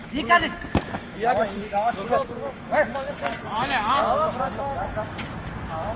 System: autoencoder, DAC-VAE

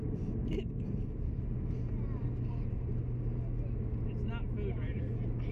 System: none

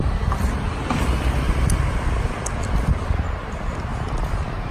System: none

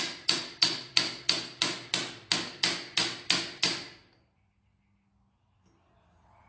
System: none